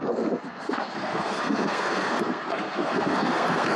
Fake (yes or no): yes